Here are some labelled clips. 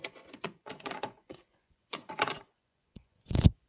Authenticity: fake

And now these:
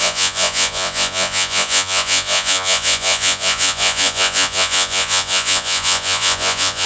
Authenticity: fake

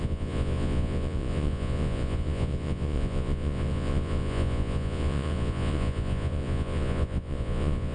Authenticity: fake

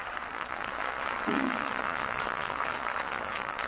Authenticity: fake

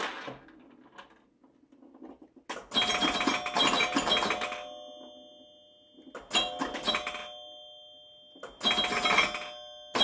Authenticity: real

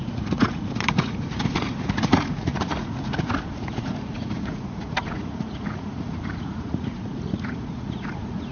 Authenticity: fake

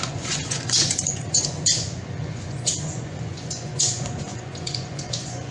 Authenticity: fake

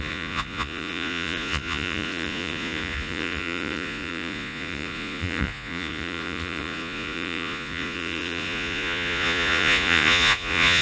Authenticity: fake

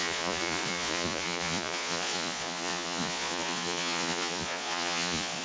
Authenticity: fake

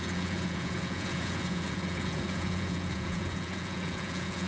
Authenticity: fake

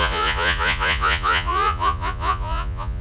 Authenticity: fake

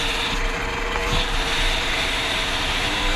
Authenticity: real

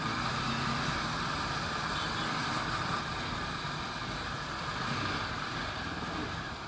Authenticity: real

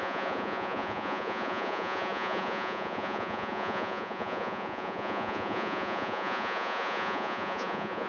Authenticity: fake